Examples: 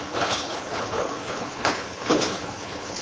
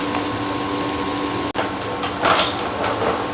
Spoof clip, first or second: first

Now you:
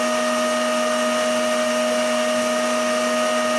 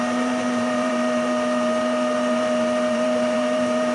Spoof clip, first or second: second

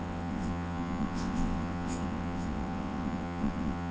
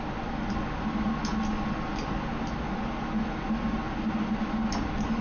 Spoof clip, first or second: first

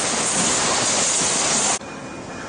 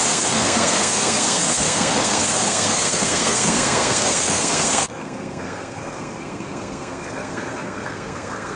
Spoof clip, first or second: second